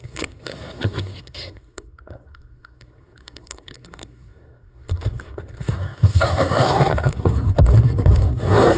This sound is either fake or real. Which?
fake